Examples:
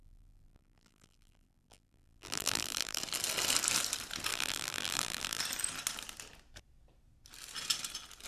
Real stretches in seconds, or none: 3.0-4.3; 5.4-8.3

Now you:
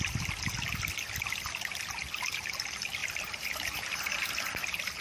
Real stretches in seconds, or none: 0.0-3.0; 4.4-5.0

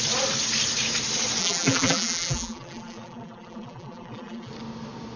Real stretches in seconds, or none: 0.0-1.4; 4.5-5.2

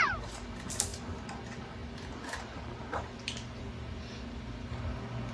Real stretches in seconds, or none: 0.0-5.3

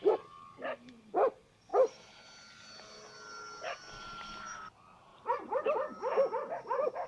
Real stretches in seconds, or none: 0.0-5.1; 5.6-7.1